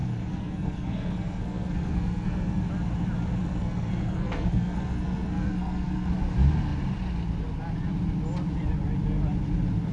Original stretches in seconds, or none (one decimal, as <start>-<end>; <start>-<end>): 2.6-3.4; 6.1-9.9